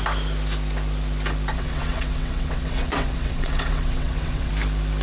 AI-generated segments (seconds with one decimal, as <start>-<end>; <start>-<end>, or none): 1.5-4.5